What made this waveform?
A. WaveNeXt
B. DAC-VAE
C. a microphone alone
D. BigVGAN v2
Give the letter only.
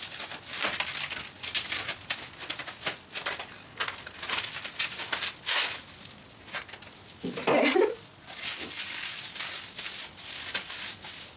C